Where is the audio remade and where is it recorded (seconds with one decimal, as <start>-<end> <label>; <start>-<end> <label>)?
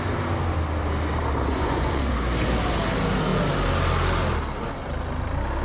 0.0-1.5 recorded; 1.5-2.1 remade; 2.1-5.6 recorded